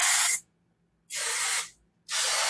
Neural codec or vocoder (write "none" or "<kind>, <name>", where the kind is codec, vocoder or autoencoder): none